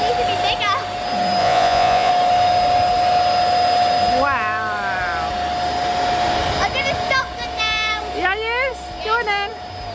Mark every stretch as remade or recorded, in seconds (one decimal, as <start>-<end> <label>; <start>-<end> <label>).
0.0-1.4 recorded; 1.4-2.1 remade; 2.1-9.9 recorded